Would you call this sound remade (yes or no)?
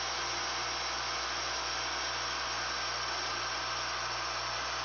no